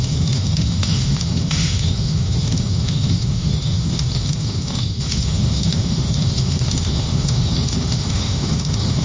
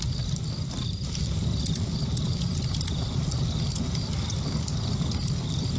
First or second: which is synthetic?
first